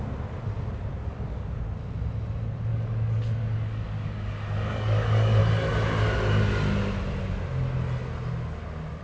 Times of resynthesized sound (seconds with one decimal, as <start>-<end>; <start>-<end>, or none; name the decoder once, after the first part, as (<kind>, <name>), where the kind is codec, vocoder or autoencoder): 1.0-1.6 (codec, DAC); 2.7-5.4